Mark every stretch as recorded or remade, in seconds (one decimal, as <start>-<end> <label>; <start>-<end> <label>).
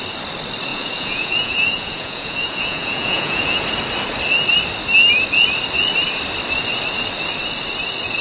0.0-0.7 recorded; 0.7-3.6 remade; 3.6-8.2 recorded